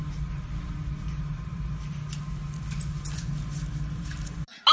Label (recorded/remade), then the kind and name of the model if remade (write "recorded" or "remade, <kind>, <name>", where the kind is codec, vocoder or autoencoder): recorded